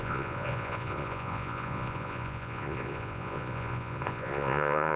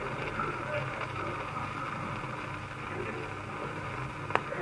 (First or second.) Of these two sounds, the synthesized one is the first